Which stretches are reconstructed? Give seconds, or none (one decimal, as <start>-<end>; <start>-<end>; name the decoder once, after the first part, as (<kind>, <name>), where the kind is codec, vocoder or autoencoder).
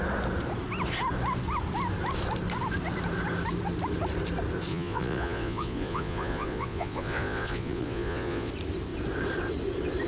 4.7-8.5 (vocoder, Vocos)